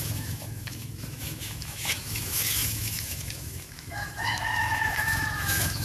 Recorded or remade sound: remade